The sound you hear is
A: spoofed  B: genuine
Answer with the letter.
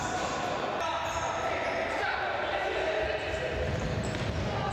B